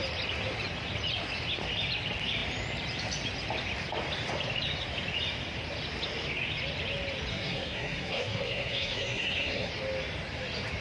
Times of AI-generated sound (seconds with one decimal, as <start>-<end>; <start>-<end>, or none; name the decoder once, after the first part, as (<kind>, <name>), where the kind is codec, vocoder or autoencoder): 7.3-9.7 (codec, SNAC)